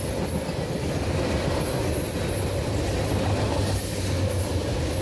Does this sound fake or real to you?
real